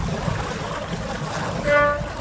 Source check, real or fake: real